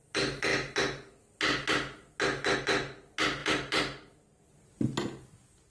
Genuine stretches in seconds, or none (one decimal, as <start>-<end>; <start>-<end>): 0.0-5.7